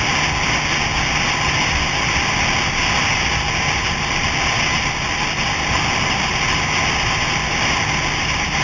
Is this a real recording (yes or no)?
yes